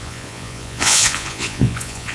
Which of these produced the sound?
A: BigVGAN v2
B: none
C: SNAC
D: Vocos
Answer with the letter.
D